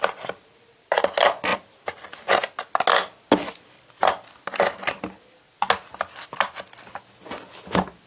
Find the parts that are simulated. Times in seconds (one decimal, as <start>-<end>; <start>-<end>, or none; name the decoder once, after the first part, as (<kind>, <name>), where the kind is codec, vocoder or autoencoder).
none